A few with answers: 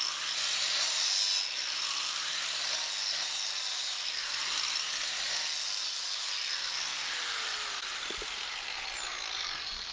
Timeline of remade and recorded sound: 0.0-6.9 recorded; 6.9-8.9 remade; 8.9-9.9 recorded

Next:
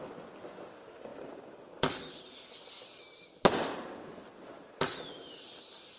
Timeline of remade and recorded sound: 0.0-6.0 recorded

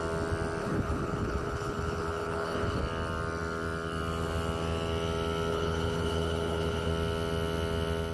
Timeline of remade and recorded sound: 0.0-0.6 recorded; 0.6-2.8 remade; 2.8-5.5 recorded; 5.5-6.9 remade; 6.9-8.1 recorded

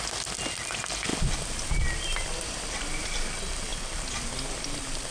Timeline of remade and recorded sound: 0.0-5.1 recorded

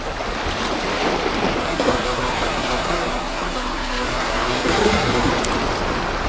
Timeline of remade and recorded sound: 0.0-1.6 recorded; 1.6-5.3 remade; 5.3-6.3 recorded

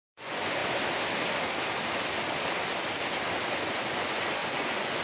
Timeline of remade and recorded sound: 0.0-0.6 remade; 0.6-3.6 recorded; 3.6-5.0 remade

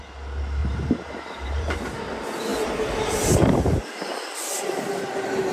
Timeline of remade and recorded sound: 0.0-0.6 recorded; 0.6-1.7 remade; 1.7-5.5 recorded